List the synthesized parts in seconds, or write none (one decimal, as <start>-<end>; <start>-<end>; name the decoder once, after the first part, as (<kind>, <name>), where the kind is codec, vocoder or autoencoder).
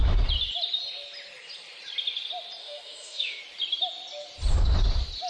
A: 2.6-3.4 (autoencoder, DAC-VAE)